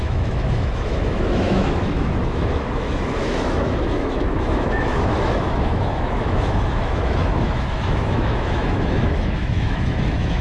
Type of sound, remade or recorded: remade